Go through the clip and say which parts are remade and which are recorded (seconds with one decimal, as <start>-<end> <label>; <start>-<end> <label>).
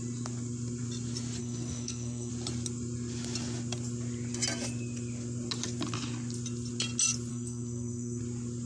0.0-1.4 recorded; 1.4-2.3 remade; 2.3-7.3 recorded; 7.3-8.2 remade; 8.2-8.7 recorded